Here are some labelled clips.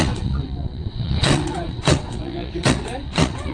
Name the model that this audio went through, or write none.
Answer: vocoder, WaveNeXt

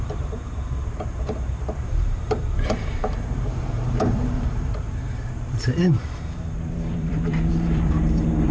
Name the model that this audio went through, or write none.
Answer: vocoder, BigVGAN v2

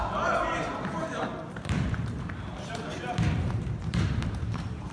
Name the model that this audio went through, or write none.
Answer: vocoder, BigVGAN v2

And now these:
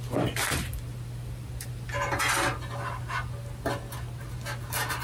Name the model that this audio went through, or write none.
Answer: none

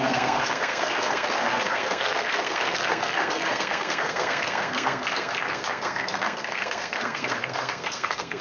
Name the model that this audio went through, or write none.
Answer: codec, SNAC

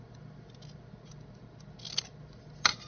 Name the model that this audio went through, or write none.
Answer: none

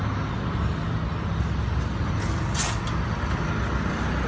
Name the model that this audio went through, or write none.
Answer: none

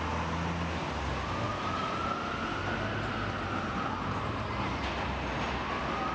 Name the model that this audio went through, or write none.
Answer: none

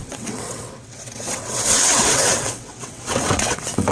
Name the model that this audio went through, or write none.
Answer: vocoder, WaveNeXt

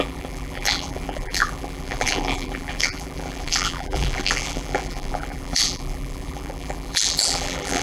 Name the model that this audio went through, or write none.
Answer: vocoder, BigVGAN v2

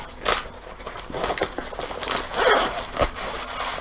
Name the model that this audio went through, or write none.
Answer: none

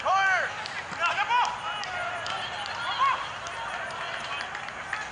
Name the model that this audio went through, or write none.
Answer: none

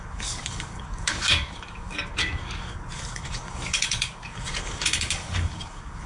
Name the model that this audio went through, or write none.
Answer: codec, DAC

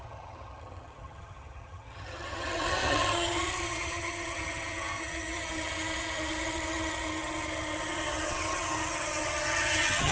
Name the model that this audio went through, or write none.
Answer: vocoder, HiFi-GAN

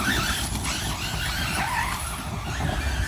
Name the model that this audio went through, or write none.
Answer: none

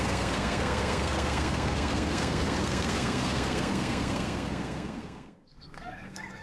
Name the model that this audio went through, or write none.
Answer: codec, SNAC